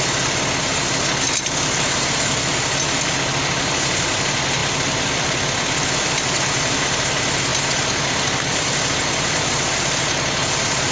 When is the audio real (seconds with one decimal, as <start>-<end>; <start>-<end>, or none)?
0.0-4.6; 6.5-7.5; 9.6-10.9